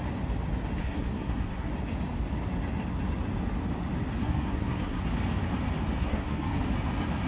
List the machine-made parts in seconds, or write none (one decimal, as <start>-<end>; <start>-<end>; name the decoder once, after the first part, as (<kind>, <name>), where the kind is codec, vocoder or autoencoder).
0.8-1.7 (codec, SNAC); 4.2-5.0; 6.0-6.6